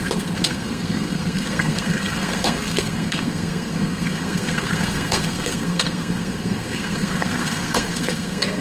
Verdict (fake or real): fake